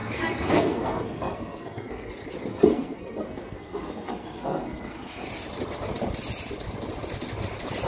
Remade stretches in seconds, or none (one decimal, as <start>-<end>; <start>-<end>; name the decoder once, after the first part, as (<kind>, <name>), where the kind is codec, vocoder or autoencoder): 0.0-2.1 (codec, SNAC); 2.5-5.3